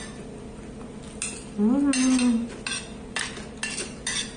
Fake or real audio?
real